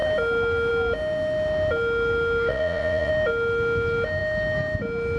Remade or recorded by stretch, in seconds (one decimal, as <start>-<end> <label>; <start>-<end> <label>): 0.0-2.5 recorded; 2.5-3.1 remade; 3.1-5.2 recorded